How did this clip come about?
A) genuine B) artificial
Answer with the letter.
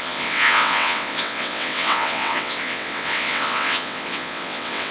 B